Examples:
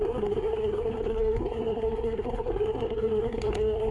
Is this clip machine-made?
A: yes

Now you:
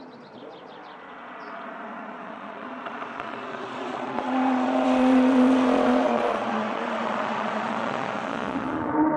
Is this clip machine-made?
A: yes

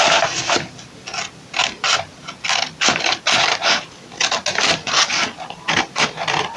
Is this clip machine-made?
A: no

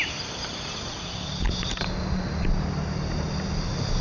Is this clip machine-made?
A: no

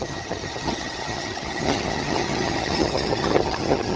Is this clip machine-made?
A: yes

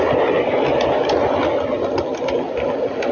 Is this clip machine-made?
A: no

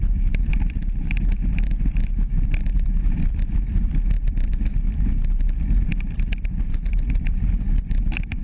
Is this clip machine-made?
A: yes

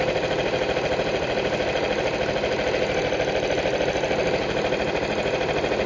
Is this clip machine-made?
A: no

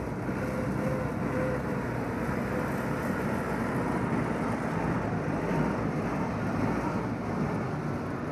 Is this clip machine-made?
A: no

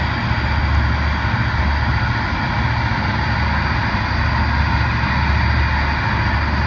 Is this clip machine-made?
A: no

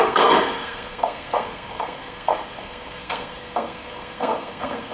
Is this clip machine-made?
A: yes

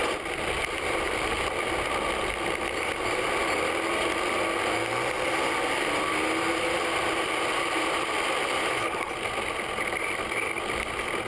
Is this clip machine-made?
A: no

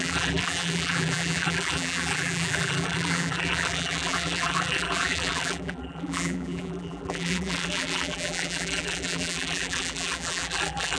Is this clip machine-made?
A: yes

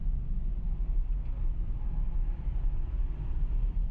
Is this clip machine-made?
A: no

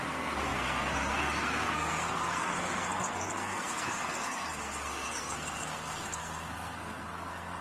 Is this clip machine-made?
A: yes